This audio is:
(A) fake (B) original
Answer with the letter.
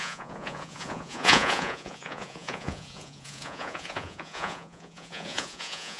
A